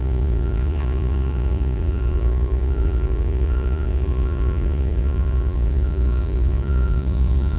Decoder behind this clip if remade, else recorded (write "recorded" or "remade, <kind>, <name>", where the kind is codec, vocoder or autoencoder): remade, vocoder, Vocos